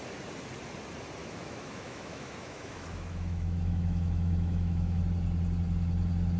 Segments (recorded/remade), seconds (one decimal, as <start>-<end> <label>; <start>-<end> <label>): 0.0-1.2 recorded; 1.2-5.0 remade; 5.0-6.4 recorded